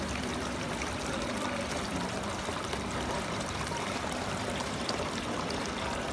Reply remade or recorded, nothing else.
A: remade